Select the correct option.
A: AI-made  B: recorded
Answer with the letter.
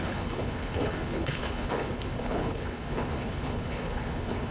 A